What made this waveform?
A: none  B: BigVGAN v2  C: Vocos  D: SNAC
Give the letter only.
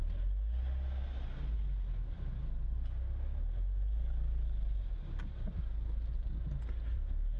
A